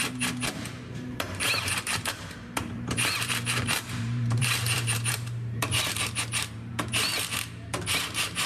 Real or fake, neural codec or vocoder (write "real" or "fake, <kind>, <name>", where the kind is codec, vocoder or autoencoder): fake, vocoder, BigVGAN v2